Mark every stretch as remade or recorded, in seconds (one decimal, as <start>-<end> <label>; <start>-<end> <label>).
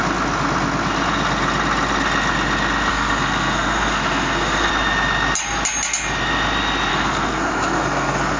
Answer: 0.0-2.9 recorded; 2.9-4.7 remade; 4.7-6.9 recorded; 6.9-8.4 remade